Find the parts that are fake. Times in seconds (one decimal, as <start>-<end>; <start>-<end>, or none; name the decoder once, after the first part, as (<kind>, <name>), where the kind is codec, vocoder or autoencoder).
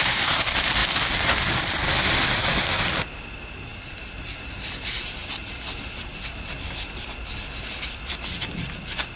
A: none